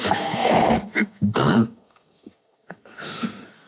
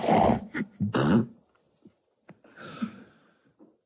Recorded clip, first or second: second